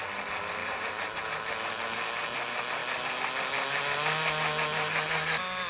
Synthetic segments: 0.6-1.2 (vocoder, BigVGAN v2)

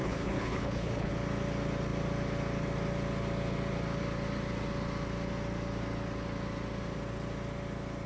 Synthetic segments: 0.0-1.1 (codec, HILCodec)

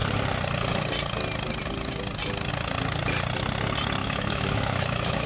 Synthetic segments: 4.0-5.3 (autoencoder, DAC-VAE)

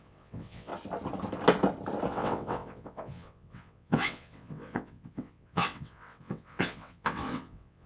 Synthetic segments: 0.0-0.7 (vocoder, WaveNeXt); 2.1-7.9